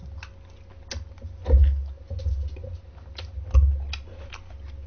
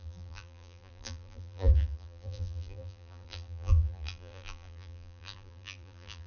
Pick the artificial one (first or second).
second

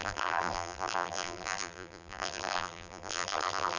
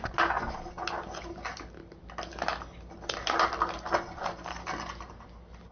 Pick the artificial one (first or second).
first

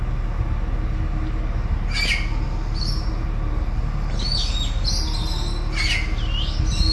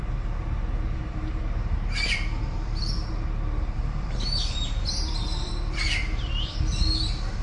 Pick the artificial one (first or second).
second